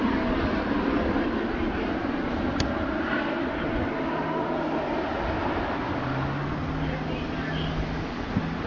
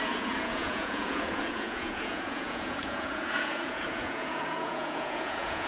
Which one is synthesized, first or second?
second